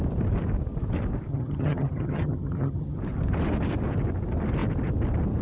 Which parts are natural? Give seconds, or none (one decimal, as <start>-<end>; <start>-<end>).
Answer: 0.0-1.3; 3.0-5.4